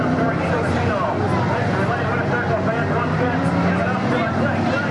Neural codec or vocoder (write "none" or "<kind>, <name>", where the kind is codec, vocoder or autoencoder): none